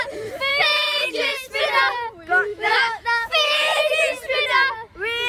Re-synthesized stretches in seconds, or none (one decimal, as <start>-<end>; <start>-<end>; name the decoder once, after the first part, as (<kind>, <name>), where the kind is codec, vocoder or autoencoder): 0.5-1.1 (autoencoder, DAC-VAE); 2.5-3.9